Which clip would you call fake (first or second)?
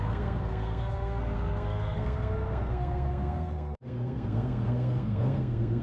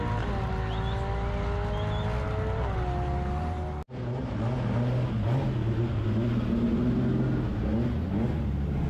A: first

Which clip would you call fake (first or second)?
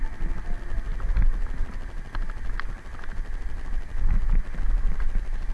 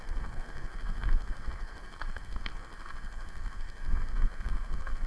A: second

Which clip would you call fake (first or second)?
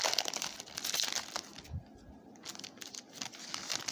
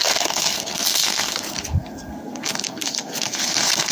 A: second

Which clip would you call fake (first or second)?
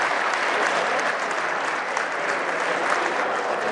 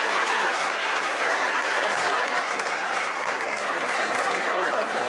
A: second